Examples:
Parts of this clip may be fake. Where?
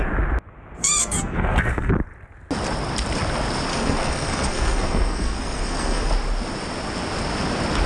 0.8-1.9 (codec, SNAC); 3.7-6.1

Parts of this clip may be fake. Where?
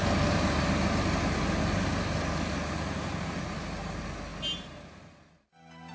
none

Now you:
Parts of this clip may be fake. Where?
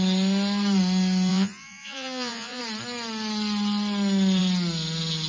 1.3-2.6 (vocoder, Vocos)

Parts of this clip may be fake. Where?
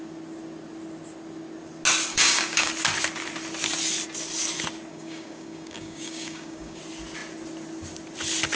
2.1-2.7 (codec, DAC); 4.9-6.8